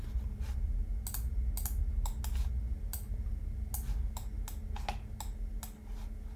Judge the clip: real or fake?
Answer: real